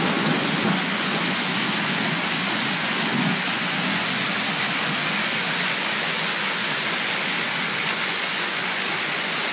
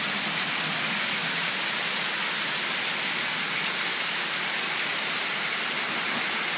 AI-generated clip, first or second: first